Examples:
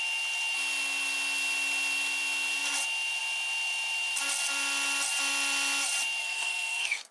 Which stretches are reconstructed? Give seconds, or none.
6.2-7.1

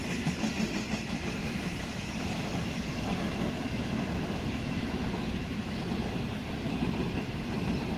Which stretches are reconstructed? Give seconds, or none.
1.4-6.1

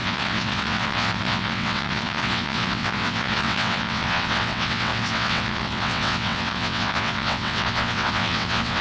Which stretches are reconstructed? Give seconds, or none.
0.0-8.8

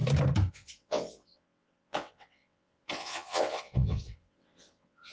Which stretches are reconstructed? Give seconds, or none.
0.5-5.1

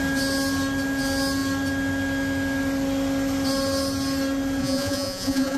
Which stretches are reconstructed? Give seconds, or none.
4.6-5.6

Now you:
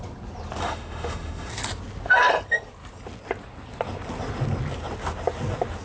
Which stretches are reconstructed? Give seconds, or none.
0.6-1.5